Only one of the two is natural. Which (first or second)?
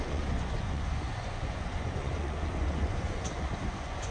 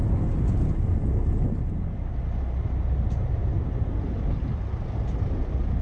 second